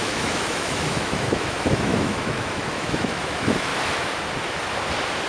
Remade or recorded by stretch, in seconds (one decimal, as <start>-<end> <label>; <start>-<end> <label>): 0.0-3.7 remade; 3.7-5.3 recorded